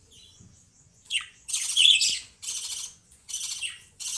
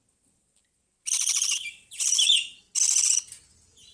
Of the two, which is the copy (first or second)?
first